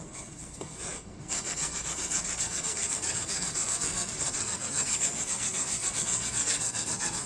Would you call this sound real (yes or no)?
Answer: no